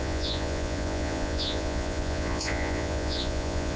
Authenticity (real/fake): fake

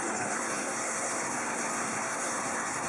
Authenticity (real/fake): fake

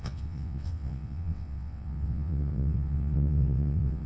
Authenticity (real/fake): fake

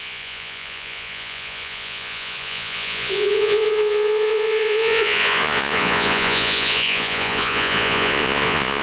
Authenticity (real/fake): fake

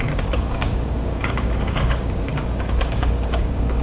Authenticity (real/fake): fake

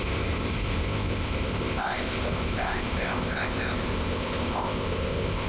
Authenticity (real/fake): fake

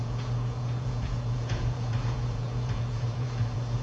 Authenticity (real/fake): fake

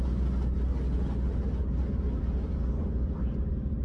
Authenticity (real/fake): real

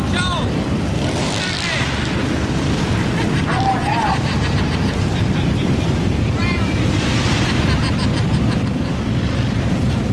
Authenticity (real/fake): fake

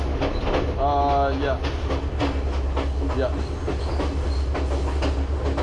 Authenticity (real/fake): real